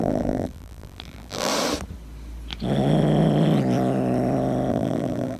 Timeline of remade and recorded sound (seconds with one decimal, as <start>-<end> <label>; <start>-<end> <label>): 0.0-1.5 remade; 1.5-4.7 recorded; 4.7-5.4 remade